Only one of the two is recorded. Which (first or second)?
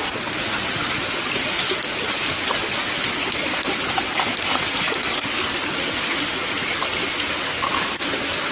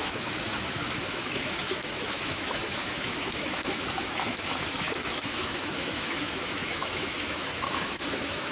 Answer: first